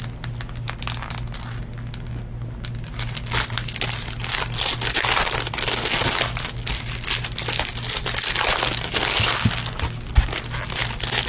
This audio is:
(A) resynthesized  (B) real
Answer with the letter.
B